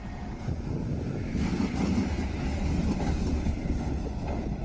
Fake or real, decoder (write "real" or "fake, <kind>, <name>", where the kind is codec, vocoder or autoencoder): real